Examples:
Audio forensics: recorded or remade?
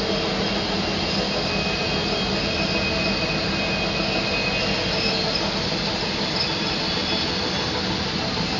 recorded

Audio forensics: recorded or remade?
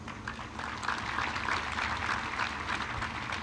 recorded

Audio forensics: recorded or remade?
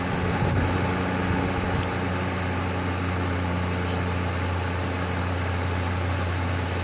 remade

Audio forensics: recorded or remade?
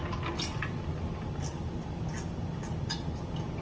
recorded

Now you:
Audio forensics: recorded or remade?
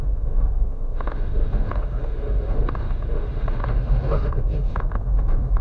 remade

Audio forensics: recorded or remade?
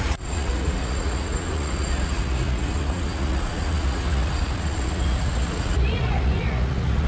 remade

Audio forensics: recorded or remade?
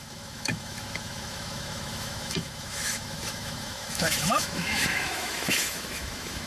remade